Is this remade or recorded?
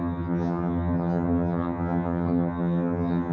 remade